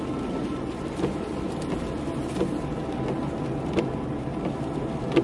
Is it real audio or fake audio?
real